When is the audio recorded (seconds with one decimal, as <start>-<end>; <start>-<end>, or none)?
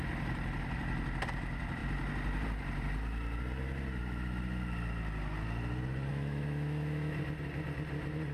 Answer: 0.0-6.1; 7.2-8.3